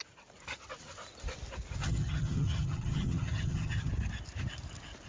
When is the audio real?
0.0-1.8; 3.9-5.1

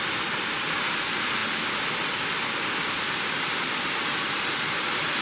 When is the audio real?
0.0-5.2

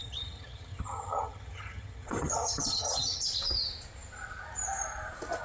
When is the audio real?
3.2-5.4